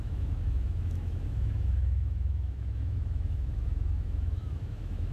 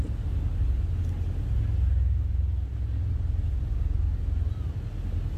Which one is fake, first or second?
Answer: first